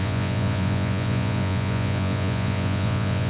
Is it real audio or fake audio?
fake